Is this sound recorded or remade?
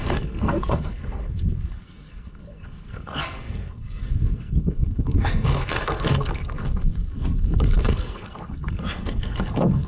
remade